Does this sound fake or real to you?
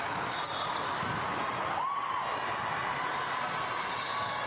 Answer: real